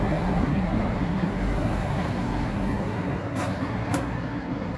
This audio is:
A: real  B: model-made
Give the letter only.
B